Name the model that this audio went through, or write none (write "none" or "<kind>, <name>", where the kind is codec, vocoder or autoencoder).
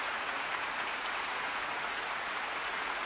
vocoder, Vocos